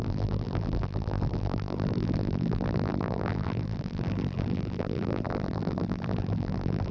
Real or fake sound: fake